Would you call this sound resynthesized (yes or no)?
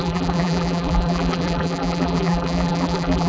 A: yes